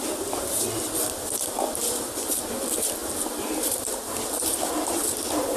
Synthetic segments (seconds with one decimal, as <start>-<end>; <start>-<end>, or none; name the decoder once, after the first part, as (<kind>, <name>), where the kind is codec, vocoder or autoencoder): none

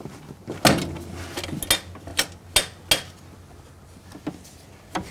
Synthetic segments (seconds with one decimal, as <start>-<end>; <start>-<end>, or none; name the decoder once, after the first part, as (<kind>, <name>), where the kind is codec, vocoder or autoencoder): none